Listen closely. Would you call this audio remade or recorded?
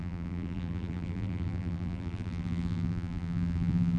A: remade